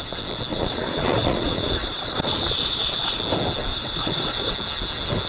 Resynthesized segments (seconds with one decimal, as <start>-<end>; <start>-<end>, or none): 0.5-3.2; 3.7-4.5